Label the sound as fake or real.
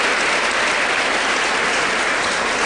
real